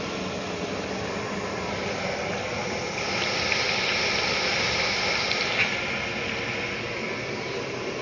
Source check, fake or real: real